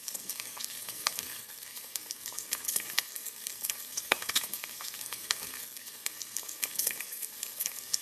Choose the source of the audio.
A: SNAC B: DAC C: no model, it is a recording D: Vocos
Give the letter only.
A